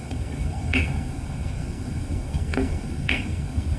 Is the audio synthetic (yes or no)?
yes